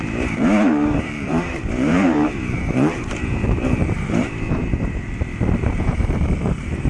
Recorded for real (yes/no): no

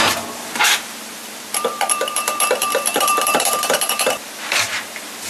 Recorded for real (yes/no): no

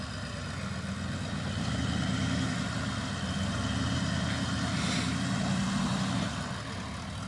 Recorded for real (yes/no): yes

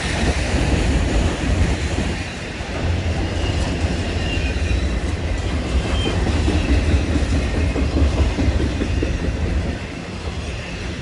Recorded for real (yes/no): no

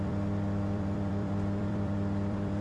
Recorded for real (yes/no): no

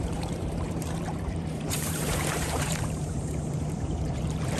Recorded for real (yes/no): no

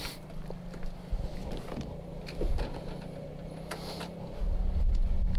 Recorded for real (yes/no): yes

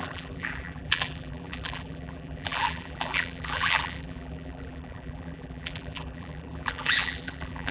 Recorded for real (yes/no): no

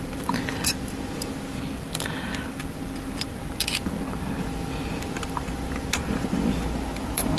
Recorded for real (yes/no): no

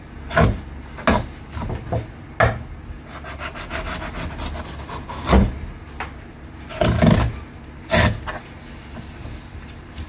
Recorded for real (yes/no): yes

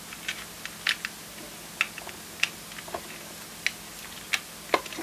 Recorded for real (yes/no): yes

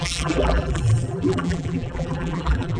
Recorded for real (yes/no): no